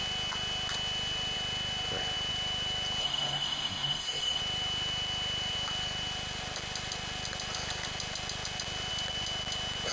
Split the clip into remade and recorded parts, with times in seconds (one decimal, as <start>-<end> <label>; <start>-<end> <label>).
0.0-3.0 recorded; 3.0-4.4 remade; 4.4-9.9 recorded